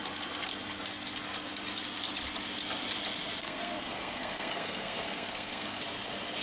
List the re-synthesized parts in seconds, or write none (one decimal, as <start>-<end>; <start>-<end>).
3.4-5.8